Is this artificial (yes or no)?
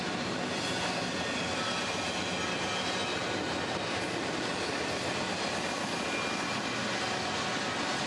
no